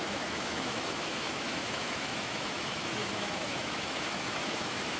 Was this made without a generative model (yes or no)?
no